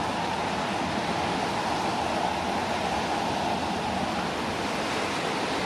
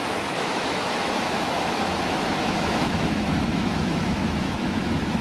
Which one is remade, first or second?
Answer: second